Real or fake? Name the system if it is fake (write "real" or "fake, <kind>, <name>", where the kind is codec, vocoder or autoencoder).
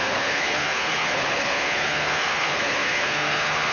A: fake, codec, HILCodec